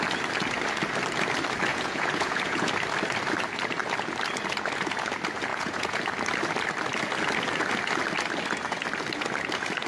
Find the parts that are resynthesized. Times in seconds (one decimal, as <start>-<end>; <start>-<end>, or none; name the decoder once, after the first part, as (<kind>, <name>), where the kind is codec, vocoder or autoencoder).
1.7-2.7 (vocoder, Vocos); 5.5-6.0